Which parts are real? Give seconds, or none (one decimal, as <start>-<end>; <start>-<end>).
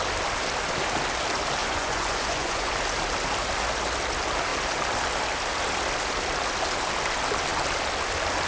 0.0-1.6; 2.7-8.5